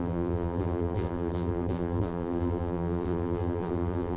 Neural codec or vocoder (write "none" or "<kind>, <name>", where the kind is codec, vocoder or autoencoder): vocoder, BigVGAN v2